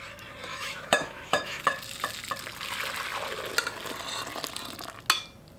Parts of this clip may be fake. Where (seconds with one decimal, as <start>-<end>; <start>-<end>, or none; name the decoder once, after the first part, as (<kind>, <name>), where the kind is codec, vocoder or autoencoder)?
0.5-1.6 (autoencoder, DAC-VAE)